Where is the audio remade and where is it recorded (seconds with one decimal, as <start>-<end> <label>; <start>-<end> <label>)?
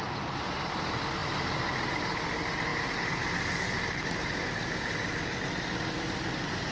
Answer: 0.0-6.7 recorded